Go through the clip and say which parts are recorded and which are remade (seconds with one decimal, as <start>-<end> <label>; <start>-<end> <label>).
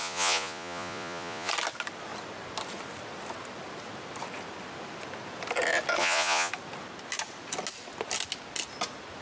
0.0-1.5 remade; 1.5-6.0 recorded; 6.0-6.5 remade; 6.5-9.2 recorded